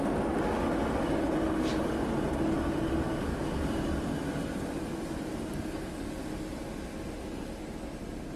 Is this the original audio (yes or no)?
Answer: yes